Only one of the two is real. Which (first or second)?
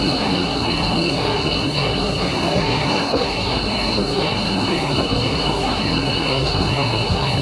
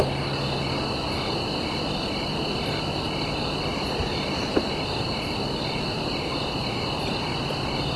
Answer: second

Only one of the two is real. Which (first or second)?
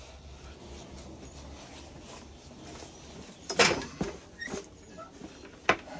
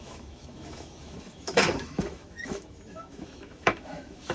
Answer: first